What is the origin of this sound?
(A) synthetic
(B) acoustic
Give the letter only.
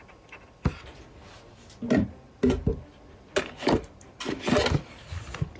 B